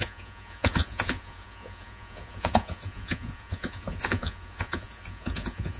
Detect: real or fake fake